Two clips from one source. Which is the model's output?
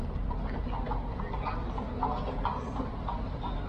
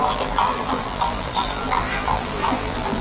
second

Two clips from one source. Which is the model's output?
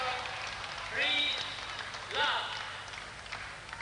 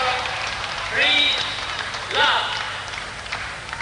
second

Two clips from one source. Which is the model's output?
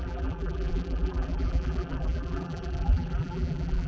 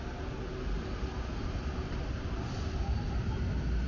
first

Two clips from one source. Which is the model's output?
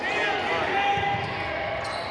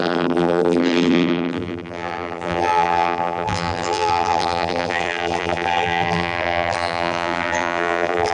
second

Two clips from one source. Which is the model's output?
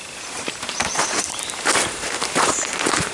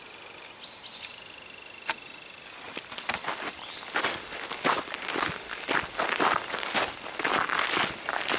first